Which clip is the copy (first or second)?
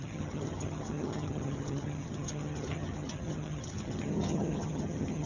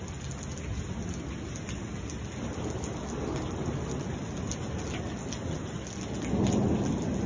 first